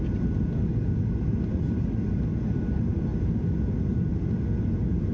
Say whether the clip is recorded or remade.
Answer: recorded